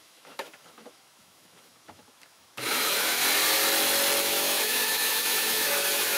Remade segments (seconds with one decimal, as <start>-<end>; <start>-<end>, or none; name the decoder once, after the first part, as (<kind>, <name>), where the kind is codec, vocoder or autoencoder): 0.0-3.2 (autoencoder, DAC-VAE); 4.2-6.2